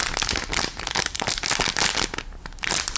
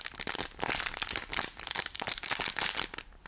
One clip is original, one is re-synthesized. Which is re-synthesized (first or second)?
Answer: second